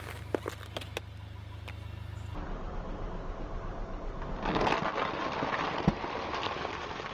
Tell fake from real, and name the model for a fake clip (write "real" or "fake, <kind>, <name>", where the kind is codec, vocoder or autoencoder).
real